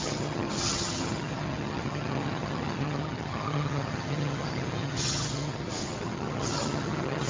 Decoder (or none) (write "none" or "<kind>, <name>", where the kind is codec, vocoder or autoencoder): vocoder, HiFi-GAN